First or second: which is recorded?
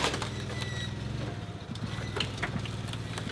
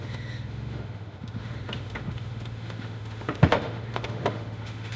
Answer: first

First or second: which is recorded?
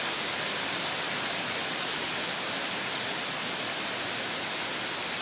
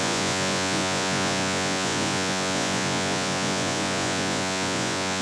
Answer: first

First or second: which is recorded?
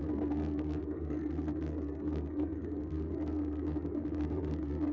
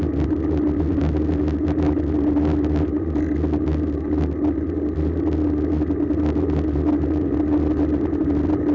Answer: second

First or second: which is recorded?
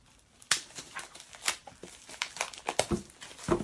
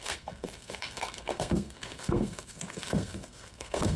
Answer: first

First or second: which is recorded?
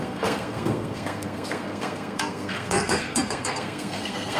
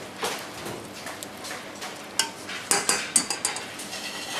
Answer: second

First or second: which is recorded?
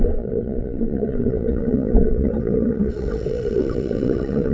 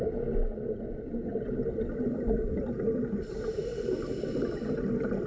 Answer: second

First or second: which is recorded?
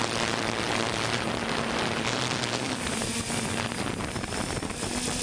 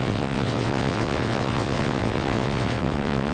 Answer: first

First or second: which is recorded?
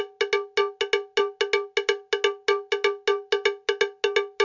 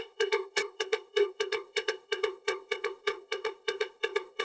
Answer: first